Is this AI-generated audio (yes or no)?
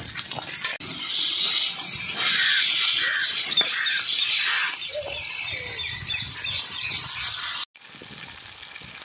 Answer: no